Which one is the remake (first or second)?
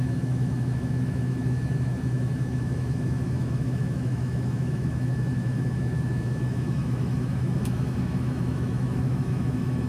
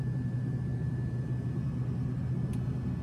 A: first